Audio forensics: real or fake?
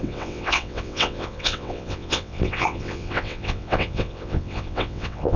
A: fake